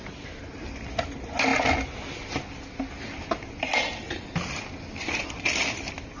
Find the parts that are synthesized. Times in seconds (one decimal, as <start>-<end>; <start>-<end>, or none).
none